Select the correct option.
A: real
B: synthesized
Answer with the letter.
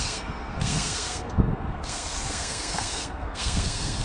B